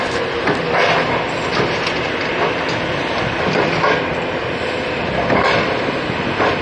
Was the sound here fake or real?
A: real